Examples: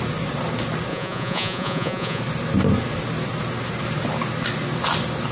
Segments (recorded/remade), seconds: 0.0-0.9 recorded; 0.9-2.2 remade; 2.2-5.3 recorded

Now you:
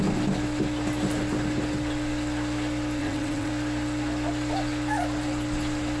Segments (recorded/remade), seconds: 0.0-3.0 recorded; 3.0-3.5 remade; 3.5-6.0 recorded